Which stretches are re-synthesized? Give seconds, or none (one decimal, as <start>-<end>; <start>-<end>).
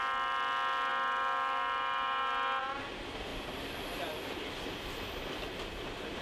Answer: none